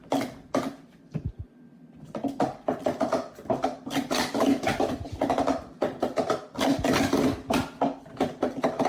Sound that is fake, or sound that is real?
real